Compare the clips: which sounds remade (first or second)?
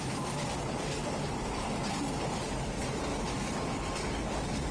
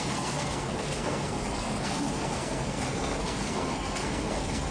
second